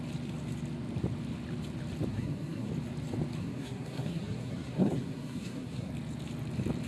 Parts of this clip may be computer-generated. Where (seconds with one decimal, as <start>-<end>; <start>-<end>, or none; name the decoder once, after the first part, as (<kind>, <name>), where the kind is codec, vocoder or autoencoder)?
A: 2.1-2.7 (codec, SNAC); 3.4-5.9